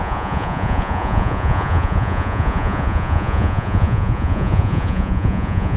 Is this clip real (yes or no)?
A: no